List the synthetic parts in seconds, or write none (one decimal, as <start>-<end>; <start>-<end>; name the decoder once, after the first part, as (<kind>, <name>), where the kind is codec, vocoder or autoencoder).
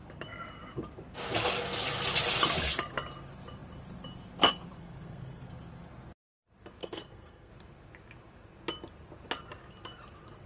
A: 4.8-5.5 (codec, SNAC); 6.8-7.5